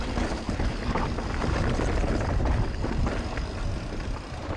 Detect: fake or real real